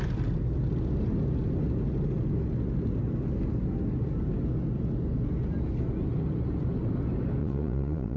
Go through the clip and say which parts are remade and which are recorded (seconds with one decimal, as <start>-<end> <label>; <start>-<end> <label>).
0.0-7.4 recorded; 7.4-8.2 remade

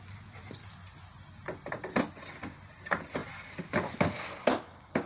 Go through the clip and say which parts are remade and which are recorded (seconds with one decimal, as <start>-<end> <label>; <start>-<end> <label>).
0.0-5.1 recorded

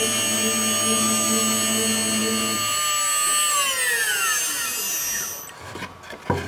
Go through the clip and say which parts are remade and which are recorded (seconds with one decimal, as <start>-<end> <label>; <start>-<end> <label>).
0.0-6.5 recorded

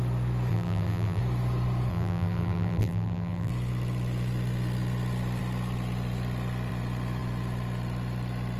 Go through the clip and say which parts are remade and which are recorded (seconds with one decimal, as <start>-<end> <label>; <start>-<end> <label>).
0.0-0.5 recorded; 0.5-1.2 remade; 1.2-1.9 recorded; 1.9-3.5 remade; 3.5-8.6 recorded

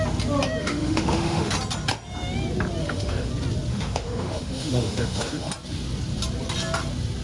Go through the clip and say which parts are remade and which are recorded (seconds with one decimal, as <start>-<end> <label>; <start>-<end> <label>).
0.0-0.6 recorded; 0.6-1.5 remade; 1.5-2.8 recorded; 2.8-3.3 remade; 3.3-3.7 recorded; 3.7-5.5 remade; 5.5-7.2 recorded

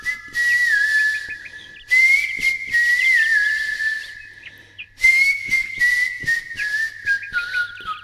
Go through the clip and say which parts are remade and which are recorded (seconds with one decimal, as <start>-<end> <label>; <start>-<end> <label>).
0.0-5.1 recorded; 5.1-5.7 remade; 5.7-8.0 recorded

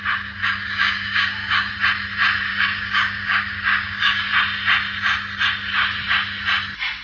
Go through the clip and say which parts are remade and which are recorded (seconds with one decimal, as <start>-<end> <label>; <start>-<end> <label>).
0.0-0.4 recorded; 0.4-1.7 remade; 1.7-2.5 recorded; 2.5-4.3 remade; 4.3-7.0 recorded